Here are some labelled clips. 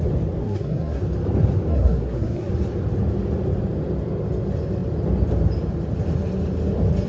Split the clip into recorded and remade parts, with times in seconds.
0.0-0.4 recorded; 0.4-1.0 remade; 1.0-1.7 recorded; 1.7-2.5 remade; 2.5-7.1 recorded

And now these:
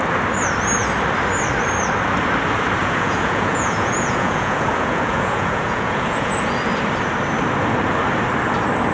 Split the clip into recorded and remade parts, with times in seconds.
0.0-2.8 recorded; 2.8-6.4 remade; 6.4-8.9 recorded

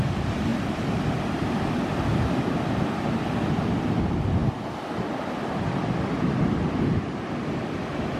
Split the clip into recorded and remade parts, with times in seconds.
0.0-8.2 recorded

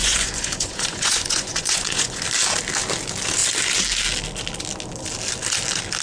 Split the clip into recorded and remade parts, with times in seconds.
0.0-2.2 remade; 2.2-6.0 recorded